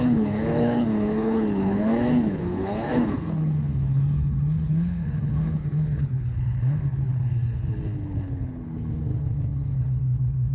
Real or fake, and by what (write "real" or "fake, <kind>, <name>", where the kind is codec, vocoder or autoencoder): fake, codec, HILCodec